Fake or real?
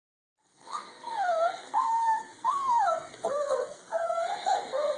fake